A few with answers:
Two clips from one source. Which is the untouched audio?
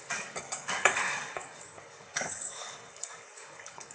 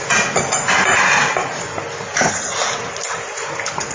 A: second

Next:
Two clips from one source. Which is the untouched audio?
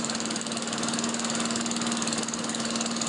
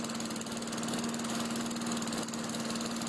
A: second